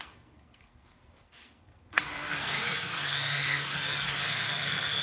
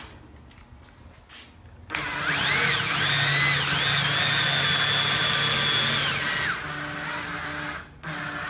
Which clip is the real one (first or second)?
second